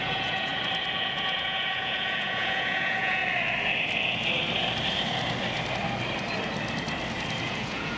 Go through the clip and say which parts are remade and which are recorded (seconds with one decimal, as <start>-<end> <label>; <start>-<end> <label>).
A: 0.0-0.5 remade; 0.5-1.0 recorded; 1.0-3.2 remade; 3.2-7.4 recorded; 7.4-8.0 remade